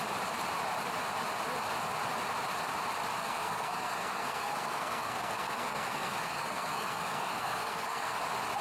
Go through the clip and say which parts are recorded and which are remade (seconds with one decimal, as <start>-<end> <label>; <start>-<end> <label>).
0.0-3.2 recorded; 3.2-8.2 remade; 8.2-8.6 recorded